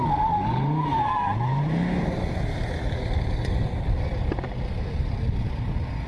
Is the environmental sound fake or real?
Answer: real